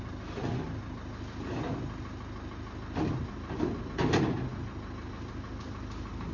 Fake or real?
real